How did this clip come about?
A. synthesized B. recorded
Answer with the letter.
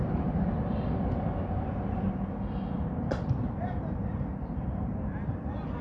B